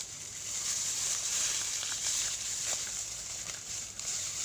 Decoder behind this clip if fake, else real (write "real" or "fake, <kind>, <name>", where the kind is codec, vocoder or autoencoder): fake, vocoder, BigVGAN v2